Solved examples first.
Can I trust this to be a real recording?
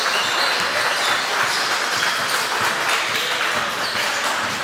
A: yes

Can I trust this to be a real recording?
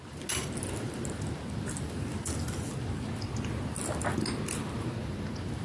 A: yes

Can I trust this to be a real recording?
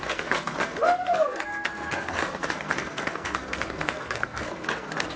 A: no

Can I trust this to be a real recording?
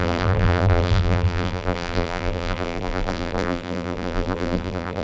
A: no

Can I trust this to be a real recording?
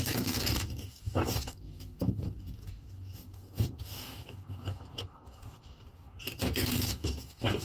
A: no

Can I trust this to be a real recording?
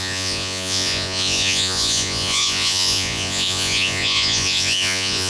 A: no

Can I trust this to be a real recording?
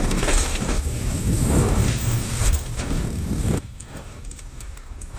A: no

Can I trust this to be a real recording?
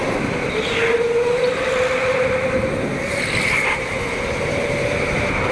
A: yes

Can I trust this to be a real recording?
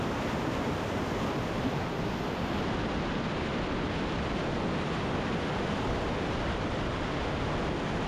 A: yes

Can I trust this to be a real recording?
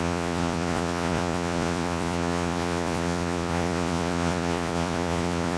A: no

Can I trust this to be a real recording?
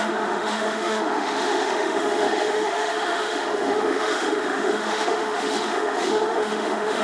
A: no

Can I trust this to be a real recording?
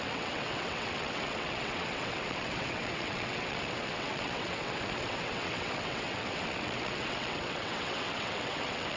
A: no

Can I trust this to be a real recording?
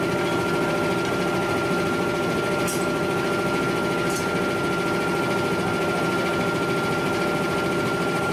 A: yes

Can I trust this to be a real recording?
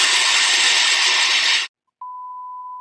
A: yes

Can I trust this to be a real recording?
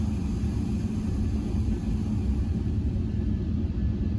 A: yes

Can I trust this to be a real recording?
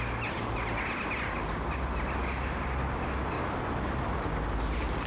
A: yes